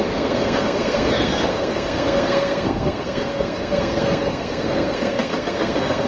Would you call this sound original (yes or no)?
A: no